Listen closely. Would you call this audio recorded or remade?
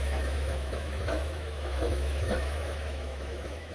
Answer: remade